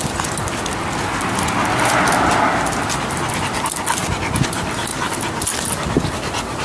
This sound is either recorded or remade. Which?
recorded